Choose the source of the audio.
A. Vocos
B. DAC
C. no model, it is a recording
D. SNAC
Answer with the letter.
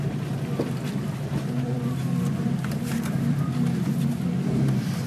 C